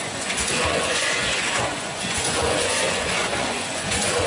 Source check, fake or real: fake